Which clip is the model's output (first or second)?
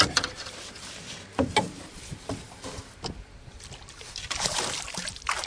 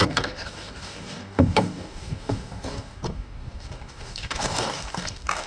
second